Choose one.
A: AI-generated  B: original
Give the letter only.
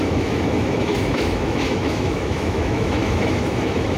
A